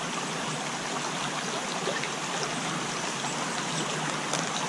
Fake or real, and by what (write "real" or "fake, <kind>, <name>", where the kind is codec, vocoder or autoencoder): real